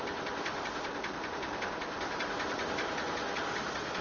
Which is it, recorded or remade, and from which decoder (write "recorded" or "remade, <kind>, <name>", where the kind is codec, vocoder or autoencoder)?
recorded